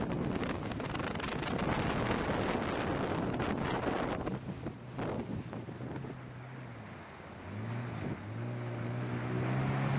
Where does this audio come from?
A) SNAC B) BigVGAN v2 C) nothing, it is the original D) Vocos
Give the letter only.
C